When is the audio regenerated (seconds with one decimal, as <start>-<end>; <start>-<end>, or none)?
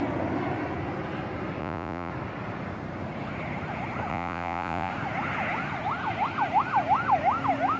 1.6-2.1; 4.1-4.9